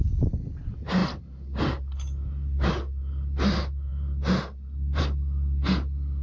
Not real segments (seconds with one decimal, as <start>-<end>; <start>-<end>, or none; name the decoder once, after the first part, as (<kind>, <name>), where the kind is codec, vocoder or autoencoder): none